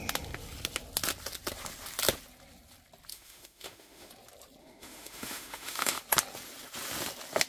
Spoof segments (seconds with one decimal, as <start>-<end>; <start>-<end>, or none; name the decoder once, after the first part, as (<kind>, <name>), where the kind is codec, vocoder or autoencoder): 3.1-4.1 (autoencoder, DAC-VAE); 4.6-6.0